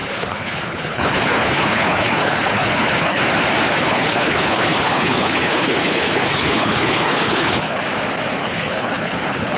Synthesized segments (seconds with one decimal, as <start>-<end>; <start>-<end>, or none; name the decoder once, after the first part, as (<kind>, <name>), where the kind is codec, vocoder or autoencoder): 0.0-3.2 (codec, HILCodec); 3.7-7.8; 8.4-9.6